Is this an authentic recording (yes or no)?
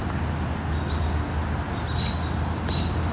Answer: yes